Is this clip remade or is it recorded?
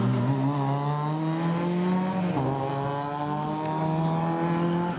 recorded